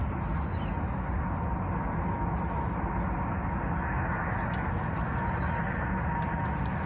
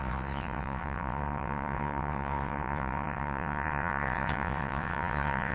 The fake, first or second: second